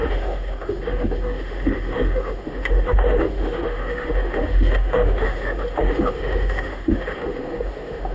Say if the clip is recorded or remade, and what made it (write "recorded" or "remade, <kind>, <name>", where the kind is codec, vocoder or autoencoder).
remade, autoencoder, DAC-VAE